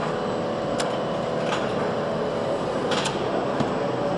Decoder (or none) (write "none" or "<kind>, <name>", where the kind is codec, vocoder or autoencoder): none